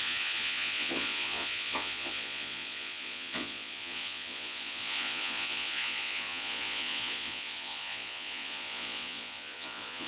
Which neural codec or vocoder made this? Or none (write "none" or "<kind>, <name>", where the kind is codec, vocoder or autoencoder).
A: vocoder, Vocos